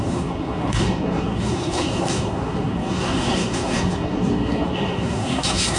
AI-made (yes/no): yes